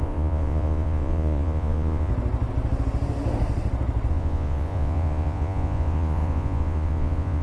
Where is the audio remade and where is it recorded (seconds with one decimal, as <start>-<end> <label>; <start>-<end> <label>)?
0.0-2.1 remade; 2.1-4.1 recorded; 4.1-7.4 remade